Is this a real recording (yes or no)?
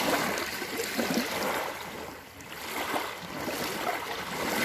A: yes